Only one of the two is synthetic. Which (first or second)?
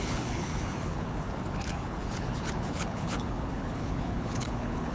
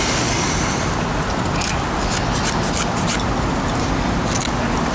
first